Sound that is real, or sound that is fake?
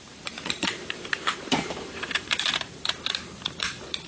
fake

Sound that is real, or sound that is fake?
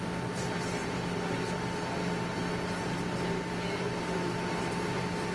real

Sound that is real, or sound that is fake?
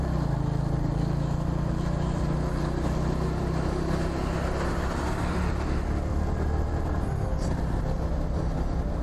real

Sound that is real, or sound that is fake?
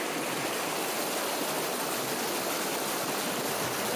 real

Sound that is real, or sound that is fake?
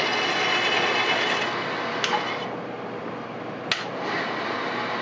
real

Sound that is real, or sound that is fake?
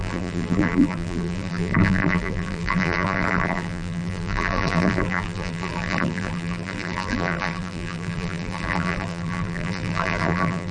fake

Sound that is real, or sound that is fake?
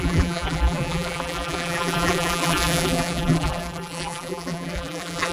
fake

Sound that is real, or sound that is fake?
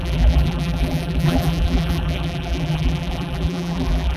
fake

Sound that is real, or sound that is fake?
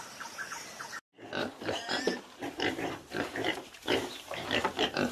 fake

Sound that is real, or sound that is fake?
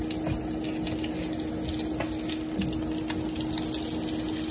real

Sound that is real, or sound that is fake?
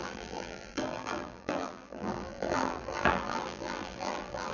fake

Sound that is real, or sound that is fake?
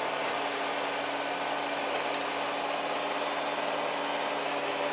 real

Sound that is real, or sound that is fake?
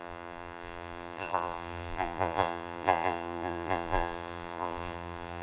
fake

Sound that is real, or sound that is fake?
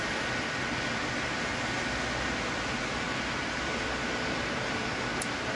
real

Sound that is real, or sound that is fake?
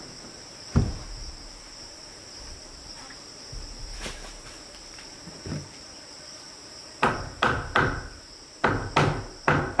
fake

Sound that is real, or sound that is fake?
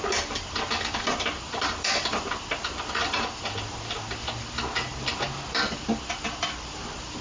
fake